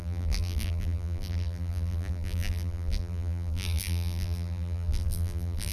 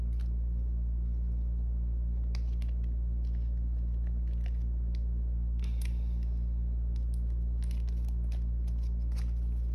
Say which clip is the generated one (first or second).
first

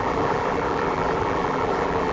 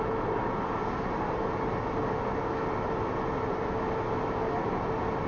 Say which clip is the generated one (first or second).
first